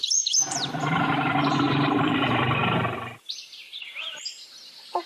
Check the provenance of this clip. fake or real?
fake